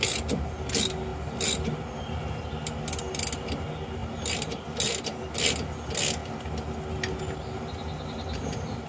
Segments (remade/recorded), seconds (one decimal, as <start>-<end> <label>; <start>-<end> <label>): 0.0-8.9 recorded